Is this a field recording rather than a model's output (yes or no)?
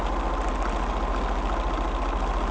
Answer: yes